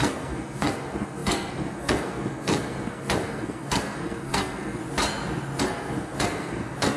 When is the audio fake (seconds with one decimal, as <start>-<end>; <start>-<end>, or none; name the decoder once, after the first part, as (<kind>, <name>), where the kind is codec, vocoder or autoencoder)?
0.0-4.8 (codec, SNAC); 5.6-7.0